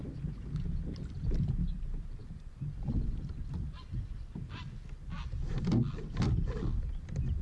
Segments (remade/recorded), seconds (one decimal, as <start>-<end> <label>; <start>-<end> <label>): 0.0-7.4 recorded